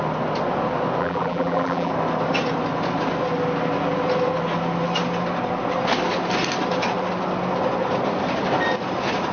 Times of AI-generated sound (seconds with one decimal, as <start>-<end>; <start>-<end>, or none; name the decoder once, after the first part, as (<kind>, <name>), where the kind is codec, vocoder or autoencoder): 1.0-1.9 (vocoder, BigVGAN v2)